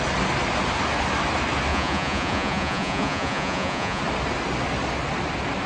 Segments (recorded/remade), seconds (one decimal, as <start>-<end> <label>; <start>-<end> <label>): 0.0-1.7 recorded; 1.7-4.0 remade; 4.0-5.7 recorded